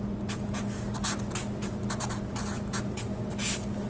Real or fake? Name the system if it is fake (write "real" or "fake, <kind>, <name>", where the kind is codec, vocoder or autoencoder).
real